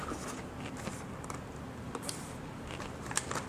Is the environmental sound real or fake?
real